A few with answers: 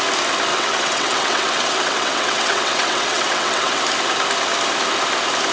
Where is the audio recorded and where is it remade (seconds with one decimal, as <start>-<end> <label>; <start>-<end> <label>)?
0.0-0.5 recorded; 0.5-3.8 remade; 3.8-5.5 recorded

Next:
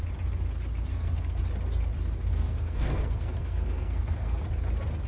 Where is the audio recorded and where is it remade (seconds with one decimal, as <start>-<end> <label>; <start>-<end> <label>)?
0.0-0.9 recorded; 0.9-1.4 remade; 1.4-2.3 recorded; 2.3-4.4 remade; 4.4-5.1 recorded

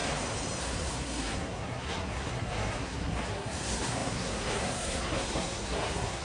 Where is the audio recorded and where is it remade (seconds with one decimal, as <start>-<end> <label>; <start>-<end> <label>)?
0.0-0.6 recorded; 0.6-6.2 remade

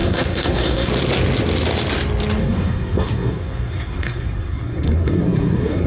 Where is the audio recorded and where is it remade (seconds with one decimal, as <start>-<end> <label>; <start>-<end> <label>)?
0.0-0.9 remade; 0.9-2.4 recorded; 2.4-5.9 remade

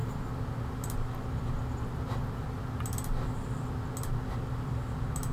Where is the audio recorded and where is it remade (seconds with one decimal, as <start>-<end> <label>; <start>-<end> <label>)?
0.0-5.3 recorded

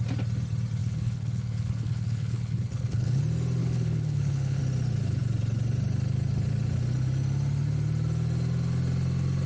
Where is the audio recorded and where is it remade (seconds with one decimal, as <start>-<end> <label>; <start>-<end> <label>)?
0.0-0.8 recorded; 0.8-3.2 remade; 3.2-3.6 recorded; 3.6-4.6 remade; 4.6-9.5 recorded